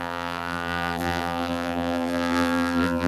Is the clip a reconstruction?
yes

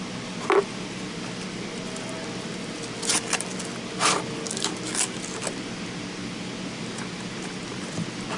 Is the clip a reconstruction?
no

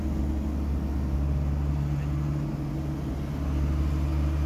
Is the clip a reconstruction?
no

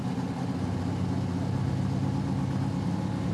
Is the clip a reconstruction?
no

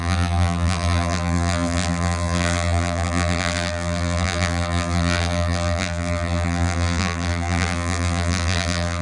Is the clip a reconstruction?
yes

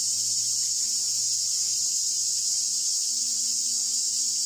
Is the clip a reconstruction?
no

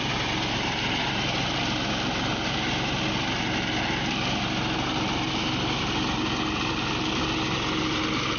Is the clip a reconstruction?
no